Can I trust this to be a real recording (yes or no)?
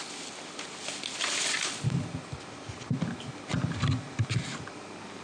yes